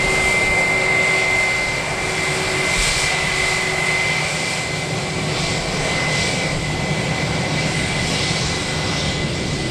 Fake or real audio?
real